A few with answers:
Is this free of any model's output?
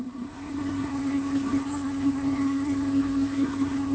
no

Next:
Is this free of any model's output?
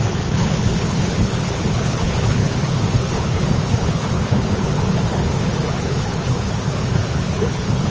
no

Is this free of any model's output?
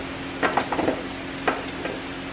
yes